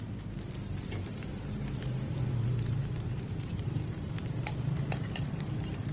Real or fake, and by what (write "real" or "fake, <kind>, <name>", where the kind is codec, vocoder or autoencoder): fake, vocoder, BigVGAN v2